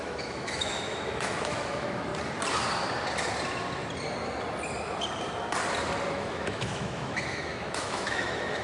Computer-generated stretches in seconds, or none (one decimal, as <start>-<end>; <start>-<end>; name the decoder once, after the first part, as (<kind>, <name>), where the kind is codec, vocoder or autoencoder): 0.0-2.1 (autoencoder, DAC-VAE); 6.1-8.6